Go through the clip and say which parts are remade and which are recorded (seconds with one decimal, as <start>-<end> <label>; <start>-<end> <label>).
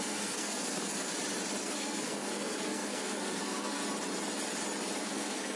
0.0-1.1 remade; 1.1-1.6 recorded; 1.6-3.8 remade; 3.8-5.0 recorded; 5.0-5.6 remade